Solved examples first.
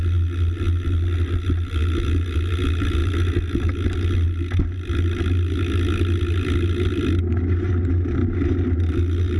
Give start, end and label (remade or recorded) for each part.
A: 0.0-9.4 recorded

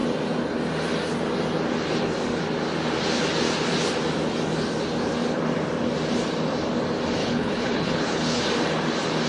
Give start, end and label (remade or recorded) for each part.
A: 0.0-7.2 recorded; 7.2-8.4 remade; 8.4-9.3 recorded

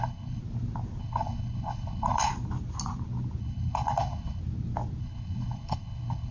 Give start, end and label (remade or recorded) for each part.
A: 0.0-0.4 remade; 0.4-1.0 recorded; 1.0-2.3 remade; 2.3-3.4 recorded; 3.4-4.4 remade; 4.4-5.0 recorded; 5.0-6.3 remade

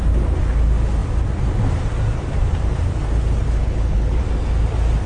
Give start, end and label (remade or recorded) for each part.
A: 0.0-3.4 recorded; 3.4-4.2 remade; 4.2-5.1 recorded

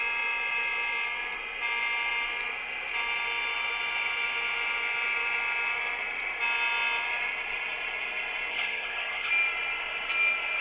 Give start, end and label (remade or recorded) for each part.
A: 0.0-8.5 recorded; 8.5-9.3 remade; 9.3-10.6 recorded